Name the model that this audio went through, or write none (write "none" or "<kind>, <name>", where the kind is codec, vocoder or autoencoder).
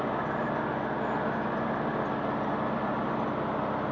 none